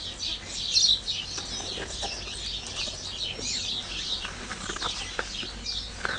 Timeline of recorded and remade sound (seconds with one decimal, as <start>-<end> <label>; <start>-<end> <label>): 0.0-6.2 recorded

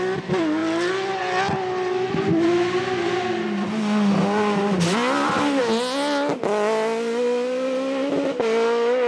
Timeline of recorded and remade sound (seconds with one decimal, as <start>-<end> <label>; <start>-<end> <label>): 0.0-9.1 recorded

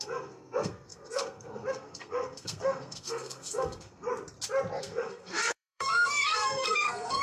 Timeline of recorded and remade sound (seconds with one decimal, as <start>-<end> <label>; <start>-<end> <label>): 0.0-4.1 remade; 4.1-4.8 recorded; 4.8-7.2 remade

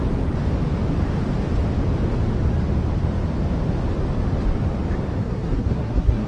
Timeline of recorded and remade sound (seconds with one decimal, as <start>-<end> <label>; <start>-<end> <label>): 0.0-5.2 recorded; 5.2-6.3 remade

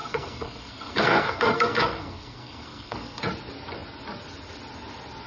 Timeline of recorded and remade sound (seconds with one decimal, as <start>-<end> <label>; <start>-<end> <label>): 0.0-3.2 remade; 3.2-5.3 recorded

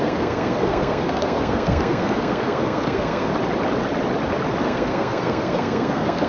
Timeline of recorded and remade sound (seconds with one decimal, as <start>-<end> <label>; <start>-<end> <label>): 0.0-3.3 remade; 3.3-4.6 recorded; 4.6-6.3 remade